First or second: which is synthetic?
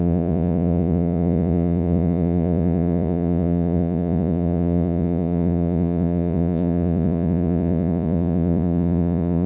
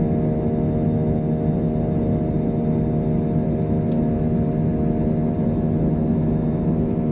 first